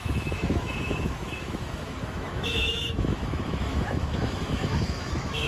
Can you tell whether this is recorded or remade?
remade